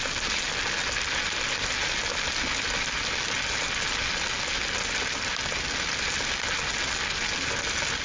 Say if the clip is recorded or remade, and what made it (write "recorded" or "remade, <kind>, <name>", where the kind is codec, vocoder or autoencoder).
recorded